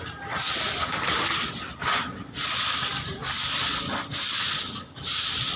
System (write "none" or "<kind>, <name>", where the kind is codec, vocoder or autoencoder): none